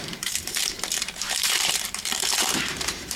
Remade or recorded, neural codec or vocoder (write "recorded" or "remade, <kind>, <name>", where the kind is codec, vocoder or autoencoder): remade, vocoder, BigVGAN v2